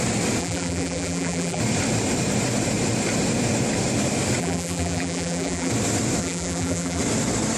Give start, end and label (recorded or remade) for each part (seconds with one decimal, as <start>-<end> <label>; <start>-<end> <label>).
0.0-0.4 recorded; 0.4-1.6 remade; 1.6-4.4 recorded; 4.4-5.7 remade; 5.7-6.2 recorded; 6.2-7.0 remade; 7.0-7.6 recorded